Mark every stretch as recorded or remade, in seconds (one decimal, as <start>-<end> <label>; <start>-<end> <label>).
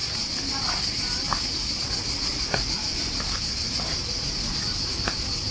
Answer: 0.0-2.3 recorded; 2.3-3.1 remade; 3.1-5.5 recorded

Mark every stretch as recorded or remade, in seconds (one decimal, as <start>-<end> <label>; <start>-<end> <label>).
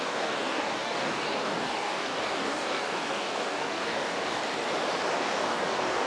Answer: 0.0-4.4 remade; 4.4-5.1 recorded; 5.1-6.1 remade